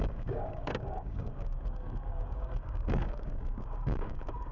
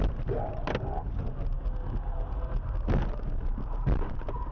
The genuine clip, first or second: second